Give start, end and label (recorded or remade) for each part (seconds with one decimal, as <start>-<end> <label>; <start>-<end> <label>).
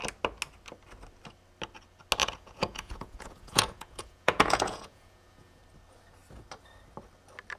0.0-2.2 recorded; 2.2-5.6 remade; 5.6-7.6 recorded